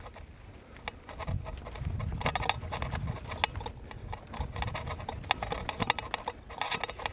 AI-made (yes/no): no